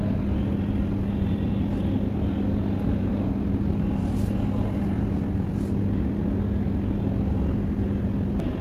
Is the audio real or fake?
real